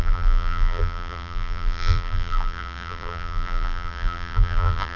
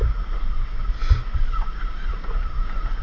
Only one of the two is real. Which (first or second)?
second